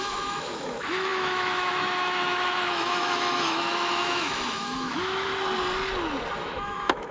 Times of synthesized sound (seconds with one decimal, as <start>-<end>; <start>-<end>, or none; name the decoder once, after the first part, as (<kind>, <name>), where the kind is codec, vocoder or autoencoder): 0.0-5.3 (autoencoder, DAC-VAE); 6.4-7.1